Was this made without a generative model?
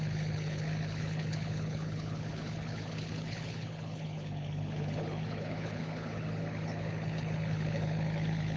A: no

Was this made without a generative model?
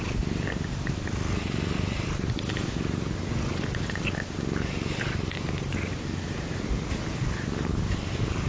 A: yes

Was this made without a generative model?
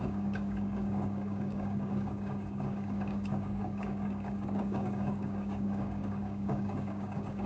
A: no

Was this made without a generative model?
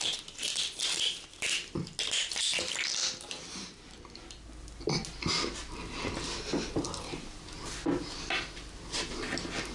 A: yes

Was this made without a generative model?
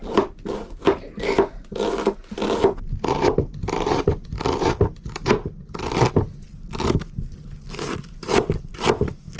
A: yes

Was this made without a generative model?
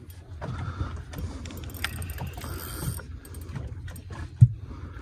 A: yes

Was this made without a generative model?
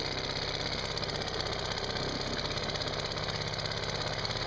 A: yes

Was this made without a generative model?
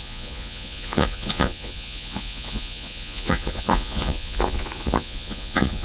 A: no